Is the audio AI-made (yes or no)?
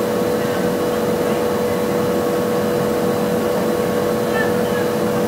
no